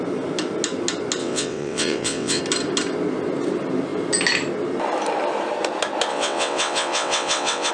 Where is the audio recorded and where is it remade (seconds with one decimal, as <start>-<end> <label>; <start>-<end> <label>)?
0.0-1.2 recorded; 1.2-2.4 remade; 2.4-6.1 recorded; 6.1-7.7 remade